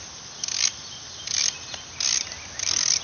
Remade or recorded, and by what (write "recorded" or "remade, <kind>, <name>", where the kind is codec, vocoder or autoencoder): recorded